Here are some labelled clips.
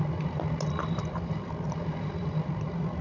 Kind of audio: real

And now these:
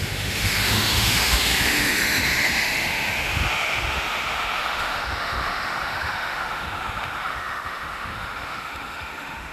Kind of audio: fake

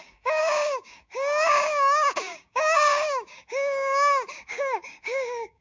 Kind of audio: fake